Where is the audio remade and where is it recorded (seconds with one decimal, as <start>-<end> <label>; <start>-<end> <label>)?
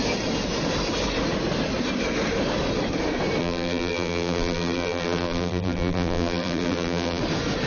0.0-3.4 recorded; 3.4-7.2 remade; 7.2-7.7 recorded